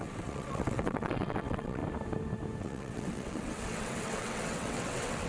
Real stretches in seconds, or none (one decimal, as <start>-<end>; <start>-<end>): 1.8-2.6